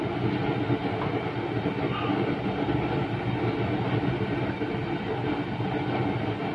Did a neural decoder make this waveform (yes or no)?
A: no